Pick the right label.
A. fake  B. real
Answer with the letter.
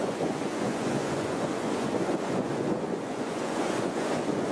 A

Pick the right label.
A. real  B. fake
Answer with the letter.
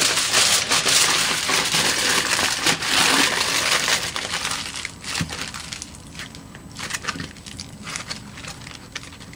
A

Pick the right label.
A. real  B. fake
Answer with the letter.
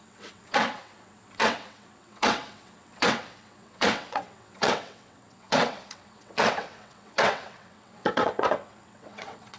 B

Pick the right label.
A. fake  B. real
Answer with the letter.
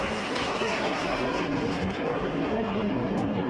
A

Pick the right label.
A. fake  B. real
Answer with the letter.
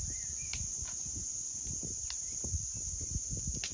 B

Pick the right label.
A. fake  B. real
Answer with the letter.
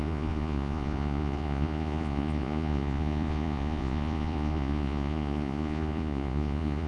A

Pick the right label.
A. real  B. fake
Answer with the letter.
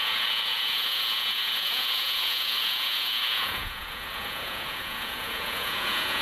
B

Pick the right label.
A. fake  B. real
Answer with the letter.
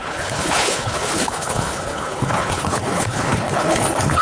A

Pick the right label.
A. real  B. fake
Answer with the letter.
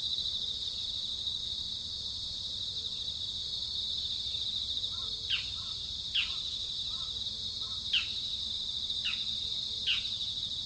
A